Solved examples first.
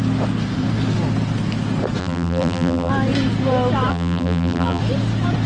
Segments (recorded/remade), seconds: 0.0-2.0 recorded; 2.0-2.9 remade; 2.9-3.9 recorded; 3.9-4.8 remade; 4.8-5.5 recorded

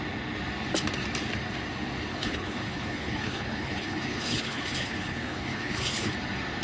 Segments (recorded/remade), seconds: 0.0-2.1 recorded; 2.1-6.1 remade; 6.1-6.6 recorded

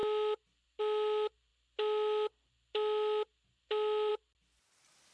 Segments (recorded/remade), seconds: 0.0-5.1 recorded

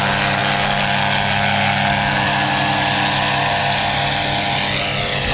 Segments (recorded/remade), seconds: 0.0-5.3 recorded

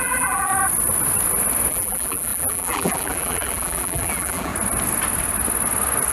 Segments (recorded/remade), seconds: 0.0-0.5 remade; 0.5-1.7 recorded; 1.7-4.5 remade; 4.5-6.1 recorded

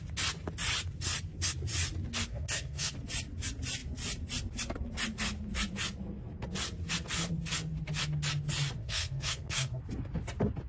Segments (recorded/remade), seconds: 0.0-2.3 recorded; 2.3-2.9 remade; 2.9-8.8 recorded; 8.8-9.8 remade; 9.8-10.7 recorded

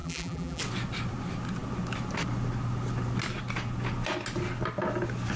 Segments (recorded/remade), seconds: 0.0-0.6 remade; 0.6-5.4 recorded